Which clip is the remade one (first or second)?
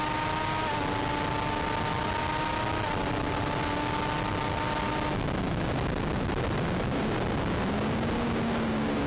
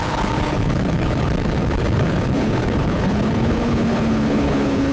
second